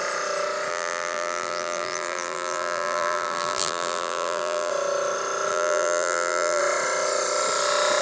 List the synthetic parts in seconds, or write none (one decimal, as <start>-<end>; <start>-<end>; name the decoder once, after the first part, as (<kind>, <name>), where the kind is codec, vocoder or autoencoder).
0.7-4.7 (vocoder, BigVGAN v2); 5.5-6.6